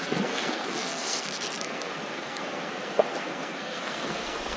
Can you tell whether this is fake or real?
fake